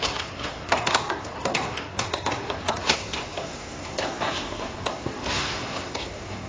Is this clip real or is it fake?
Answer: fake